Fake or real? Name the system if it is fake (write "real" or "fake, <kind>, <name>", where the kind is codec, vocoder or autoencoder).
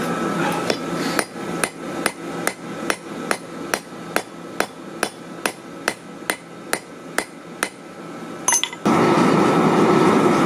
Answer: real